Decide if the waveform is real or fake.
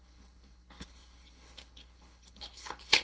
fake